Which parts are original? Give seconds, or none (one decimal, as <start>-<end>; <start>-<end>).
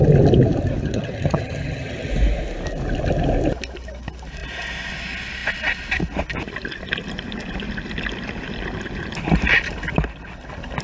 0.0-0.8; 2.1-10.8